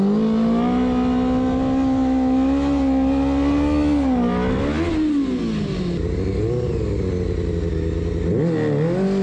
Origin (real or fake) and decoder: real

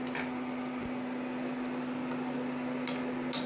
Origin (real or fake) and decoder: real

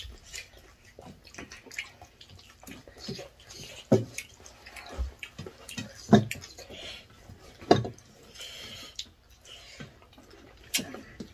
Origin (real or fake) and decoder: real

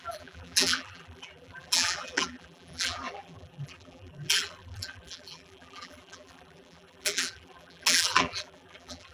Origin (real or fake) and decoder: fake, vocoder, BigVGAN v2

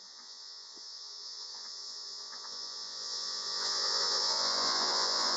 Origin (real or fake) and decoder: fake, vocoder, Vocos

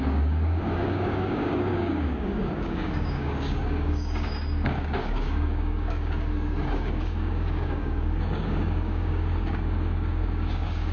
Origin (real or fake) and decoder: fake, codec, DAC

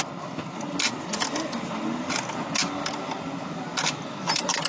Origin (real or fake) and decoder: real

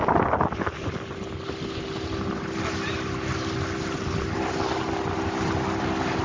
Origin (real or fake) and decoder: real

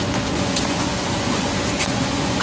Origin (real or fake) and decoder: fake, vocoder, Vocos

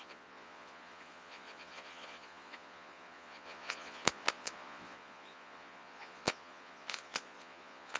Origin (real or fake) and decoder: fake, vocoder, Vocos